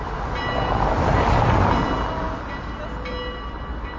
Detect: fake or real real